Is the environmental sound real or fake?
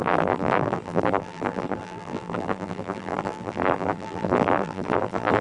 fake